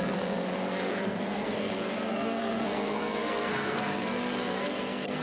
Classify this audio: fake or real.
fake